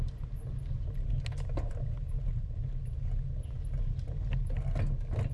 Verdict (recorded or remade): recorded